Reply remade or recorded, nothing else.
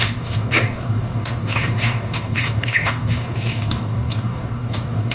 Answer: remade